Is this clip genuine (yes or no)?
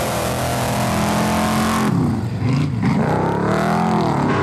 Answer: yes